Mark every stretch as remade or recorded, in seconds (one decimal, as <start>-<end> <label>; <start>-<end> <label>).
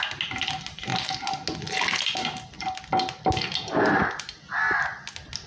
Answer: 0.0-5.5 recorded